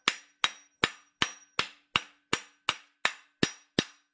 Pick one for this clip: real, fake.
real